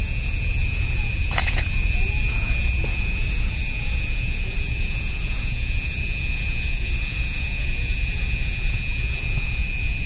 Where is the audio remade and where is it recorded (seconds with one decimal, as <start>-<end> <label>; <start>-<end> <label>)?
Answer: 0.0-10.1 remade